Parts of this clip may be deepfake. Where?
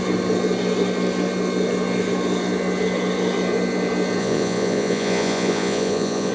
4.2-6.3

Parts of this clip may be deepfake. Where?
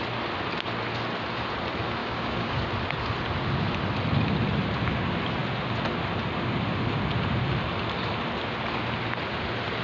2.0-2.6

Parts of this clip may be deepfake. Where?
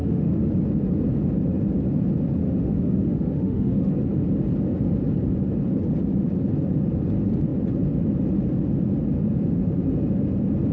0.0-0.5; 2.4-3.9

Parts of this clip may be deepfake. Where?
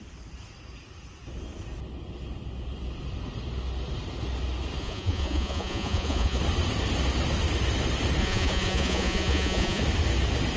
4.8-6.4; 8.2-9.8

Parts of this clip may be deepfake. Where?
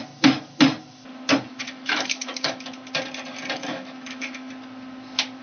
1.5-2.7; 3.7-4.5